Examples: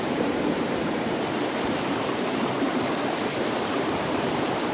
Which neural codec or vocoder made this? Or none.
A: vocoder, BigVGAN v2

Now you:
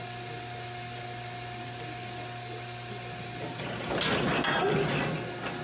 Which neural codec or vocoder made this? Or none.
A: none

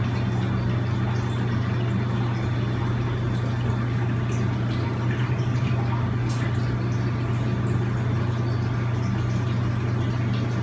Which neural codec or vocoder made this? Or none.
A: none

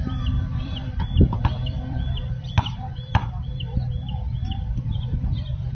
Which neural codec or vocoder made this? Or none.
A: vocoder, BigVGAN v2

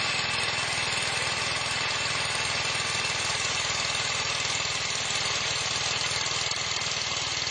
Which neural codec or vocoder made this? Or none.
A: none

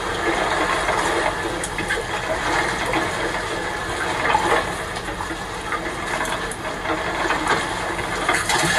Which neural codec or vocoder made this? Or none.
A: vocoder, BigVGAN v2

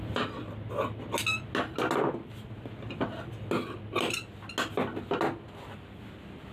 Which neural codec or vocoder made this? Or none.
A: none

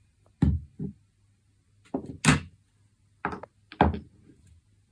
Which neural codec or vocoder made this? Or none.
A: none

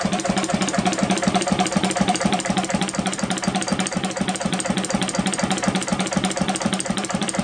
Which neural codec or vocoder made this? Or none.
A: vocoder, BigVGAN v2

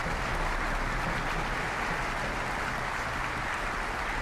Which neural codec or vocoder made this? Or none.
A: none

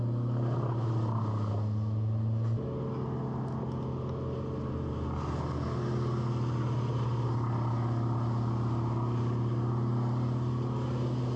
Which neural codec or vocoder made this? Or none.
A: none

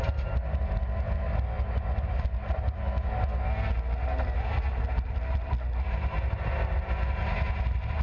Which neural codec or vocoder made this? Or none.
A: none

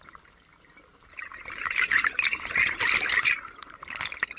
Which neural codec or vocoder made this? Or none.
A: vocoder, BigVGAN v2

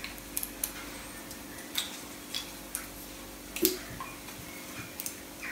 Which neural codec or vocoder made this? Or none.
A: none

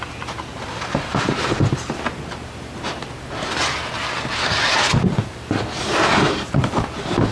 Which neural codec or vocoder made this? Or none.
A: none